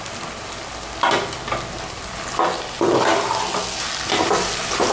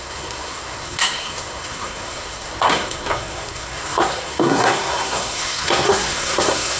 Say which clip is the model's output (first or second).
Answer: second